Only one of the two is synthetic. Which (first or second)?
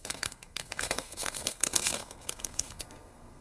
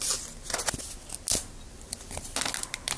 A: first